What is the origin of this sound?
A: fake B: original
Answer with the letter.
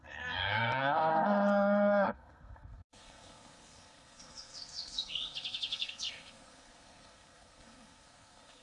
A